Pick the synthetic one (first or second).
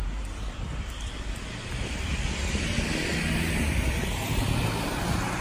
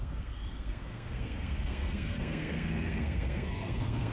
second